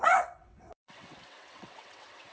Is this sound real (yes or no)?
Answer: no